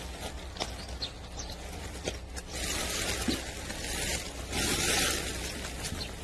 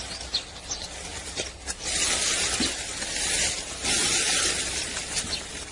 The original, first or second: first